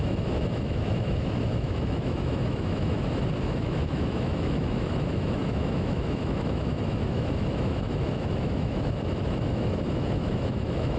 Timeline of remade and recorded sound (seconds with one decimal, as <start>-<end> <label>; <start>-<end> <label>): 0.0-11.0 remade